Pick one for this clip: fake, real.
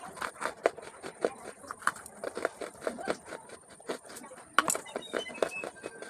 real